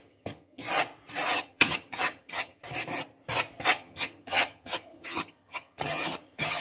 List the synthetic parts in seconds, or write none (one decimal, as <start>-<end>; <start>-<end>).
0.0-0.6; 1.3-2.6; 3.7-6.6

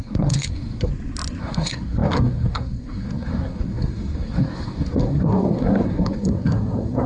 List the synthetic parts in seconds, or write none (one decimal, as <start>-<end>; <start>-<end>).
0.0-0.9; 1.4-7.1